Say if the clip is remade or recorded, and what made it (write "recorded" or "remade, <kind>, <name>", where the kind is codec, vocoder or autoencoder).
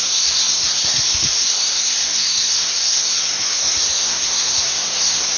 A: remade, codec, SNAC